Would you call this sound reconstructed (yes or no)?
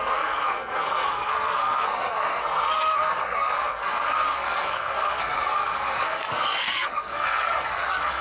yes